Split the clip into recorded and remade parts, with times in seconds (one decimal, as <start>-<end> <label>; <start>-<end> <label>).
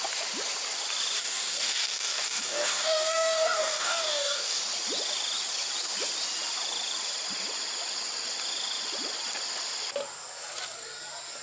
0.0-1.2 recorded; 1.2-4.6 remade; 4.6-11.4 recorded